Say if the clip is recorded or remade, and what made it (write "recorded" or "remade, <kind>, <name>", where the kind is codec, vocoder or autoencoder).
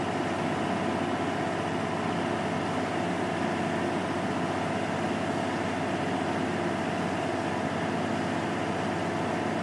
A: recorded